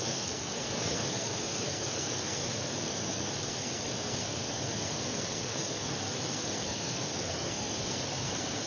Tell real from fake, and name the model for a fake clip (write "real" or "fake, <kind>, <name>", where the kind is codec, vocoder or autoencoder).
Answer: fake, codec, SNAC